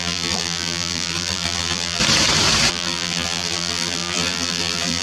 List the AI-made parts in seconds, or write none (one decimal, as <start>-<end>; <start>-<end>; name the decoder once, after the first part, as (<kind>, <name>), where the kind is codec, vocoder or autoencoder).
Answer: 0.0-2.0 (vocoder, BigVGAN v2); 2.7-5.0

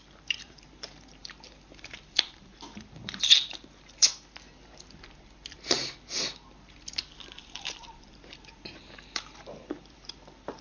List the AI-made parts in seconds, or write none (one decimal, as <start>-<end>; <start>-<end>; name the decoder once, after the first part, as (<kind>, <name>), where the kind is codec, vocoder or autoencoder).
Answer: 0.0-4.1 (vocoder, BigVGAN v2); 7.4-10.6

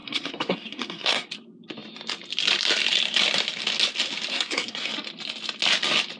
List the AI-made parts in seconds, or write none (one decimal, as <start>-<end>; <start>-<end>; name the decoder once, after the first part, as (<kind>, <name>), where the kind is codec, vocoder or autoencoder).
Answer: 0.0-1.3 (codec, SNAC); 4.3-4.9

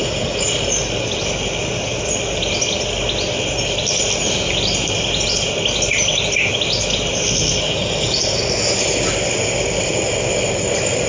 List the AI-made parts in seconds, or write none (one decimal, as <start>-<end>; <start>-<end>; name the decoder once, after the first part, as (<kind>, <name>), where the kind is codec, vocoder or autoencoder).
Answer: none